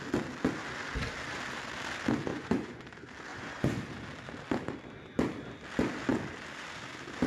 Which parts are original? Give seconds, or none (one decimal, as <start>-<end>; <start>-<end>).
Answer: 0.0-2.3; 2.8-3.3; 3.8-7.3